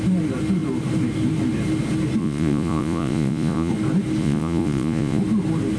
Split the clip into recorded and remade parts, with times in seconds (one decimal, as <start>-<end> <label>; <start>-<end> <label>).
0.0-2.2 recorded; 2.2-3.7 remade; 3.7-4.2 recorded; 4.2-5.2 remade; 5.2-5.8 recorded